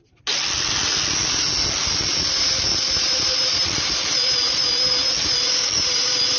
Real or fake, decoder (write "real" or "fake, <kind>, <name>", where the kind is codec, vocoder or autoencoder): real